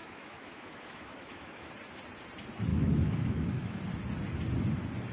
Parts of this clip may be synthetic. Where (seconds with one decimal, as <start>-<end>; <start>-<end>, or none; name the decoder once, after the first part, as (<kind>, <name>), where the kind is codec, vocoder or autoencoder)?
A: 0.0-1.7 (autoencoder, DAC-VAE); 2.7-3.8